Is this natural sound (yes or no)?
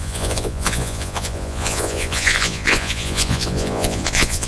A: no